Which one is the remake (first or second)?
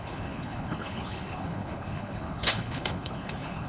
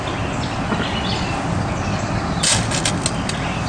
first